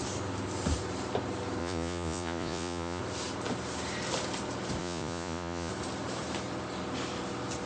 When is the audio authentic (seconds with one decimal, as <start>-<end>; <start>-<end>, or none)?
0.0-1.6; 3.0-4.8; 5.7-7.7